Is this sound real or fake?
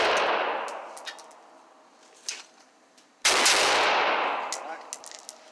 real